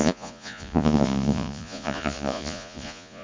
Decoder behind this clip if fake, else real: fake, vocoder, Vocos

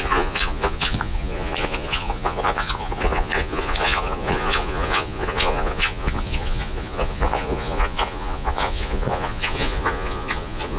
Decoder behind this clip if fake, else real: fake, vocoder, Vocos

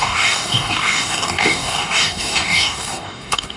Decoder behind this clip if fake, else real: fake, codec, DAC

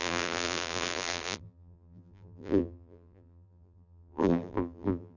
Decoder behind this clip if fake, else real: fake, vocoder, BigVGAN v2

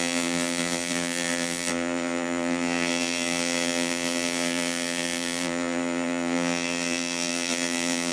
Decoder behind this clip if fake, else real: fake, vocoder, BigVGAN v2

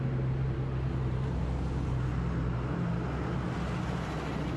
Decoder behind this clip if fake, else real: real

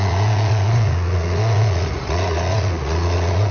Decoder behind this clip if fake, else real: fake, vocoder, Vocos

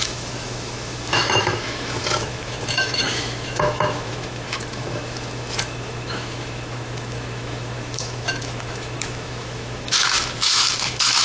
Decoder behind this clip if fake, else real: fake, autoencoder, DAC-VAE